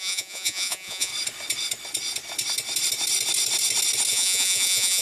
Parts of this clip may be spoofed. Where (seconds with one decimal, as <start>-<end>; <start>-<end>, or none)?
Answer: 0.0-1.1; 4.1-5.0

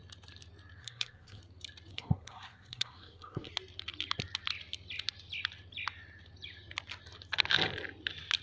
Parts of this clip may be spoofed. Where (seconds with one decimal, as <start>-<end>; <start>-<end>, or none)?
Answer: 0.8-1.4; 1.9-3.5

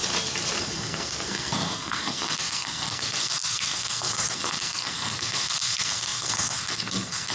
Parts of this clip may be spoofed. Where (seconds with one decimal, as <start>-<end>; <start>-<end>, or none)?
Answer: 0.6-7.3

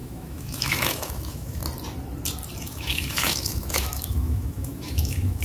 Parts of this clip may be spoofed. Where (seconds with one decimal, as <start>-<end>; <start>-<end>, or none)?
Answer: 0.0-1.6; 2.6-5.4